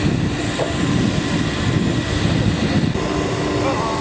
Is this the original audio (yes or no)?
yes